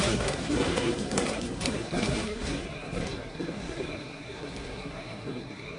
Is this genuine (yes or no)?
no